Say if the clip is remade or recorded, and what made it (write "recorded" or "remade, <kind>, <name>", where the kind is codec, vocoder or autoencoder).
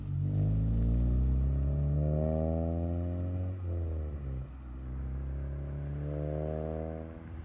recorded